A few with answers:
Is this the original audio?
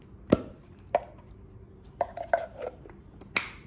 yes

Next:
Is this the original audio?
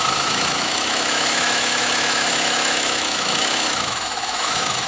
no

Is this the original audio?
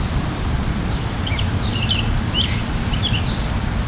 no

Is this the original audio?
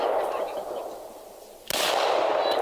yes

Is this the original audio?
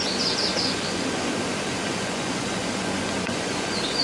no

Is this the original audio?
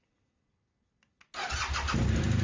yes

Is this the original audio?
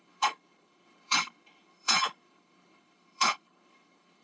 no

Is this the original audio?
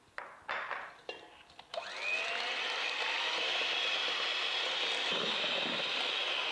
yes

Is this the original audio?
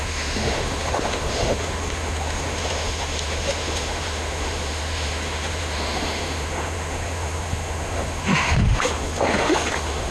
no